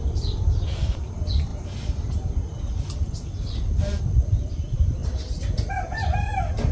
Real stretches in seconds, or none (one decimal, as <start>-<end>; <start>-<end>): 1.5-4.0; 5.0-5.7